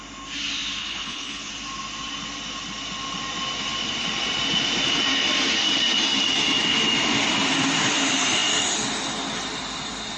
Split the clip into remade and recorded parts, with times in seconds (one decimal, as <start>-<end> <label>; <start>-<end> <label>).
0.0-0.8 recorded; 0.8-1.5 remade; 1.5-10.2 recorded